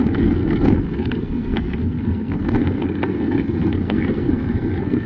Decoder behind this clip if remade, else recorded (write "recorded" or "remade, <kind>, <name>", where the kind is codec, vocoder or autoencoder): remade, codec, SNAC